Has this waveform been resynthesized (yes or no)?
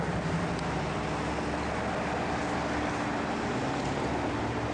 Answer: no